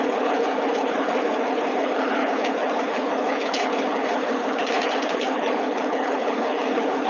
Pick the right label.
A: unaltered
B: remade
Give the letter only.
B